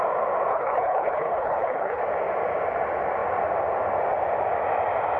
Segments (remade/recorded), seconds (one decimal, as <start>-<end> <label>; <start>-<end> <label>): 0.0-0.5 recorded; 0.5-2.0 remade; 2.0-5.2 recorded